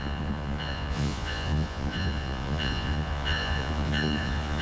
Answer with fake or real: fake